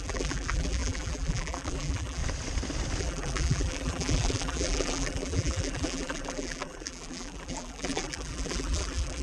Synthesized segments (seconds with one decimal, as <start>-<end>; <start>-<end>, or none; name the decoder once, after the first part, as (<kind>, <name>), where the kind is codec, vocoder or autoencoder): 0.0-2.2 (vocoder, BigVGAN v2); 3.0-9.2